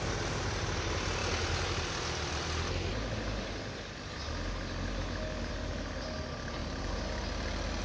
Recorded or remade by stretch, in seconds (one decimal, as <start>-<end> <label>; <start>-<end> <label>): 0.0-7.8 recorded